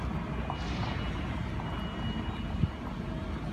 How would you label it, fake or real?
real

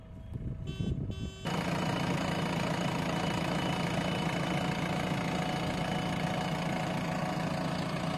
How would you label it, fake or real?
real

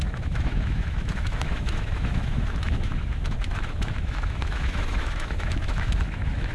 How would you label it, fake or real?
fake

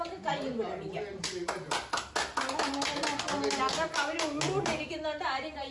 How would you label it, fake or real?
real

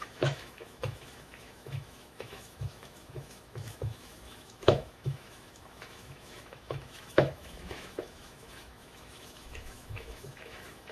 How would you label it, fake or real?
fake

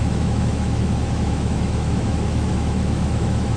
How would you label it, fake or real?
fake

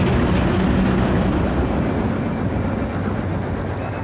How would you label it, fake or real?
real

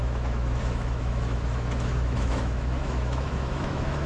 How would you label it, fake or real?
fake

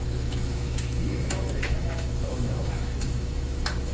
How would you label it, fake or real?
fake